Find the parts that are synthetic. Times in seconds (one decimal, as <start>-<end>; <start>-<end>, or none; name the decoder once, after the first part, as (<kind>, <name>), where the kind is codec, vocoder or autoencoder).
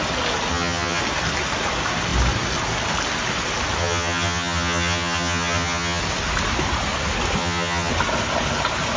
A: 0.5-1.0 (vocoder, HiFi-GAN); 3.8-6.0; 7.4-7.9